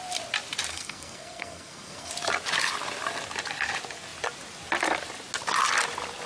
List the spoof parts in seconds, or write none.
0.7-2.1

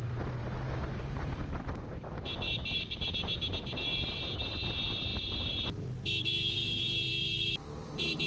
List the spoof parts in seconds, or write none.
0.0-0.4; 1.0-5.1; 6.5-7.1; 7.9-8.3

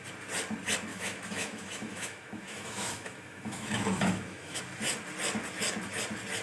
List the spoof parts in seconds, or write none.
0.9-4.6

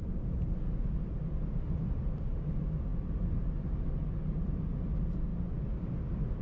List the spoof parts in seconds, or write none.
none